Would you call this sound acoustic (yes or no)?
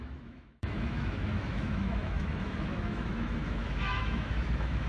no